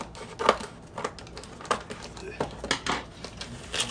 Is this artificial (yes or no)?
no